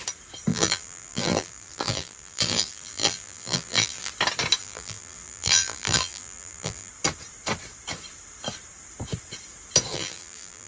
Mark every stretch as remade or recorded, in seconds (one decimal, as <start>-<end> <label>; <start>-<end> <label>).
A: 0.0-0.5 recorded; 0.5-4.1 remade; 4.1-4.6 recorded; 4.6-6.9 remade; 6.9-9.9 recorded; 9.9-10.7 remade

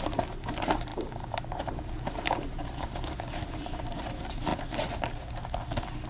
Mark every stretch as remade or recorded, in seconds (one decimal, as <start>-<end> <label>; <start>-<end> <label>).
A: 0.0-4.5 remade; 4.5-6.1 recorded

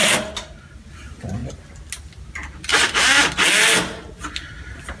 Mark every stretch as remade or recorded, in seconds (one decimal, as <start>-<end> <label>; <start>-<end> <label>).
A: 0.0-5.0 recorded

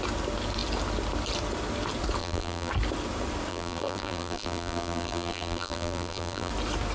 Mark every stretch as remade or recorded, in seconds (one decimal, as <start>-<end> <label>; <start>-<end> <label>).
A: 0.0-2.2 recorded; 2.2-2.7 remade; 2.7-3.5 recorded; 3.5-6.5 remade; 6.5-6.9 recorded

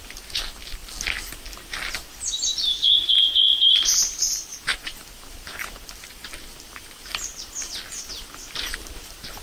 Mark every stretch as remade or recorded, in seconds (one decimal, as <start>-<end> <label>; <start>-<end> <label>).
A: 0.0-0.8 remade; 0.8-2.2 recorded; 2.2-7.3 remade; 7.3-8.1 recorded; 8.1-9.4 remade